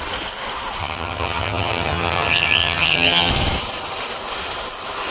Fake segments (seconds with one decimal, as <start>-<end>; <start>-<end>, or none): 0.8-3.3